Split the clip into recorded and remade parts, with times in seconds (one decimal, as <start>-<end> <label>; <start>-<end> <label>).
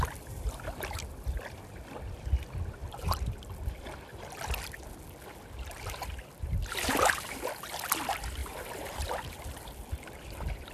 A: 0.0-2.8 recorded; 2.8-4.1 remade; 4.1-8.4 recorded; 8.4-9.0 remade; 9.0-10.7 recorded